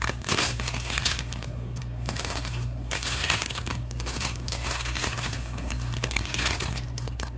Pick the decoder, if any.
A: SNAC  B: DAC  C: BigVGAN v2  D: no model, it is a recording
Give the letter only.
A